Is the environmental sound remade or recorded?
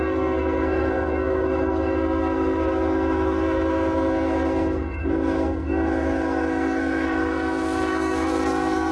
remade